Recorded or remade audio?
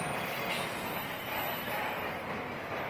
recorded